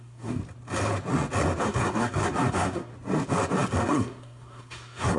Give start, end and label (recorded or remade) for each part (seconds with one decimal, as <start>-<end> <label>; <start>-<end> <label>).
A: 0.0-0.4 remade; 0.4-1.6 recorded; 1.6-2.9 remade; 2.9-3.8 recorded; 3.8-5.2 remade